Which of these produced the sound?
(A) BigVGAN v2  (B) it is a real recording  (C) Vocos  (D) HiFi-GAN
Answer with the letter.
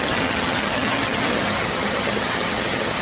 D